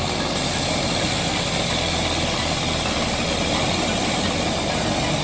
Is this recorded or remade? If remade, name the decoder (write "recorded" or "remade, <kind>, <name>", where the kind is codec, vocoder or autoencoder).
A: recorded